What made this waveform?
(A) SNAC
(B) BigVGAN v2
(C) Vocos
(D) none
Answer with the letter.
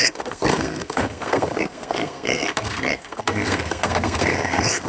A